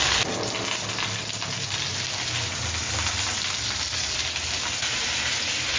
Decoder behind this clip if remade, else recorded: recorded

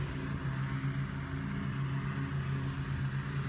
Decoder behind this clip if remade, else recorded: recorded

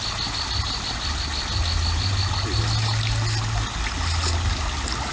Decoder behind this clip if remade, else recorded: recorded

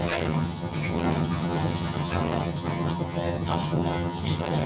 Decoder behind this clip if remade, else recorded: remade, vocoder, HiFi-GAN